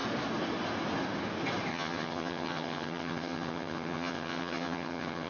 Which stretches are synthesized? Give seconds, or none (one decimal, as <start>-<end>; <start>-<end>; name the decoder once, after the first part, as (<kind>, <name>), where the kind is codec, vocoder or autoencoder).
1.7-5.3 (vocoder, HiFi-GAN)